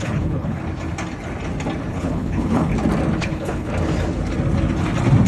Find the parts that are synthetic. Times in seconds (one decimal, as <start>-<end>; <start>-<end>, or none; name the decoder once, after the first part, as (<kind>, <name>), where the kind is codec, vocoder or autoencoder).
0.0-0.6 (codec, HILCodec); 1.9-2.7; 3.2-3.7